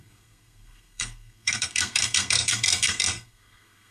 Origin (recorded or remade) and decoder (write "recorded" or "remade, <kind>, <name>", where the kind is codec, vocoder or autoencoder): remade, codec, SNAC